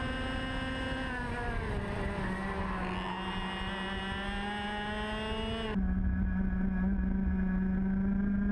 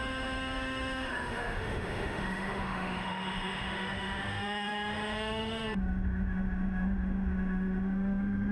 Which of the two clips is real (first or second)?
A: first